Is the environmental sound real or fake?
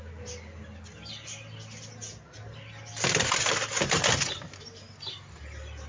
real